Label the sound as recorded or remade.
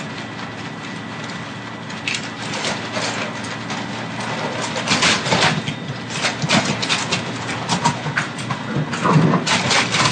recorded